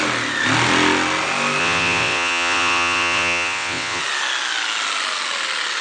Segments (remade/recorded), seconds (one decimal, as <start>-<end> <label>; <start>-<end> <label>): 0.0-1.6 recorded; 1.6-4.0 remade; 4.0-5.8 recorded